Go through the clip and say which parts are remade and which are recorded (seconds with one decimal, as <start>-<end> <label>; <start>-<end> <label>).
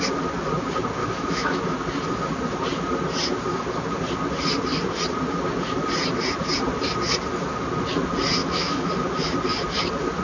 0.0-1.0 recorded; 1.0-1.6 remade; 1.6-8.4 recorded; 8.4-8.9 remade; 8.9-10.2 recorded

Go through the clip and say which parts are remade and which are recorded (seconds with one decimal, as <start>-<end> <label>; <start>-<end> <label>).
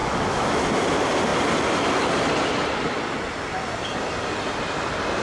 0.0-0.7 remade; 0.7-5.2 recorded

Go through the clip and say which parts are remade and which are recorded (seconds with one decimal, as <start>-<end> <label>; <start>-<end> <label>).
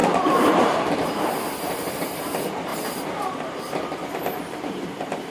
0.0-2.3 remade; 2.3-5.3 recorded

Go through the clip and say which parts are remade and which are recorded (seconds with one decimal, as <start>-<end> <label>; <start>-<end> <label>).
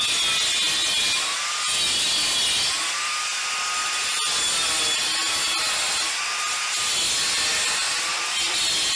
0.0-9.0 recorded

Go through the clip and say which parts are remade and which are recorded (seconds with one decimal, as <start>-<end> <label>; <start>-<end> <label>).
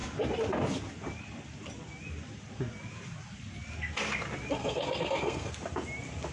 0.0-4.6 recorded; 4.6-5.5 remade; 5.5-6.3 recorded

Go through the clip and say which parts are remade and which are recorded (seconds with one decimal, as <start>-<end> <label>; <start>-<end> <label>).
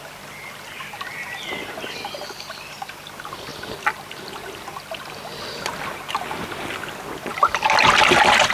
0.0-8.5 recorded